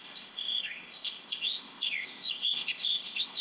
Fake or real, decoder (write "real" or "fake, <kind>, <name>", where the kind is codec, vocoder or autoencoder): fake, codec, ZipCodec